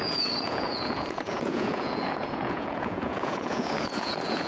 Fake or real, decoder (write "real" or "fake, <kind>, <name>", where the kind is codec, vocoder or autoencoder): fake, vocoder, Vocos